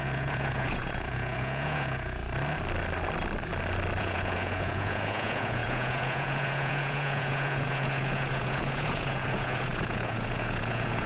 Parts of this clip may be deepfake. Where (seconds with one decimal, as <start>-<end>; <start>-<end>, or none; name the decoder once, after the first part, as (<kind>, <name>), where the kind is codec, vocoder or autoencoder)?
0.0-2.2 (vocoder, Vocos); 4.0-11.1